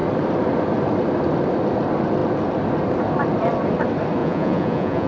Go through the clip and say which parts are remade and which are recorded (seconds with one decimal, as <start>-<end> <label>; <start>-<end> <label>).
0.0-4.2 recorded; 4.2-5.1 remade